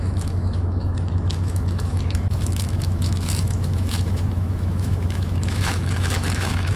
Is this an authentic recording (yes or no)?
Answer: no